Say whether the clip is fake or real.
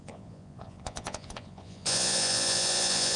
fake